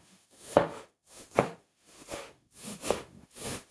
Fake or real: fake